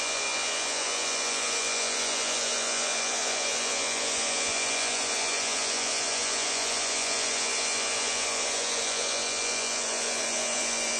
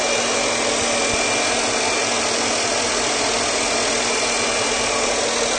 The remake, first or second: first